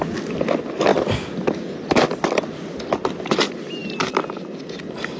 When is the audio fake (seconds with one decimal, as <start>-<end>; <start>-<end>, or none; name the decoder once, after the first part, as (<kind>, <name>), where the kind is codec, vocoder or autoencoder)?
none